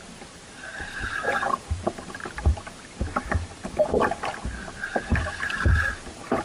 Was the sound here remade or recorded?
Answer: recorded